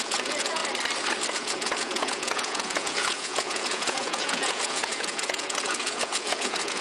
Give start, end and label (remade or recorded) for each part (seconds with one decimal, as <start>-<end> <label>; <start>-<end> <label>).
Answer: 0.0-0.6 remade; 0.6-1.3 recorded; 1.3-6.8 remade